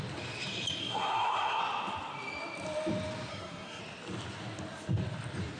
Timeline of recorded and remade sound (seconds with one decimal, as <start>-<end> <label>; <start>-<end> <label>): 0.0-0.8 recorded; 0.8-1.6 remade; 1.6-3.3 recorded; 3.3-3.8 remade; 3.8-5.6 recorded